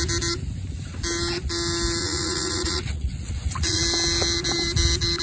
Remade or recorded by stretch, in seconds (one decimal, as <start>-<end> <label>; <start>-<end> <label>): 0.0-2.0 recorded; 2.0-3.8 remade; 3.8-5.2 recorded